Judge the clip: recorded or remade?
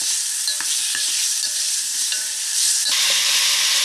remade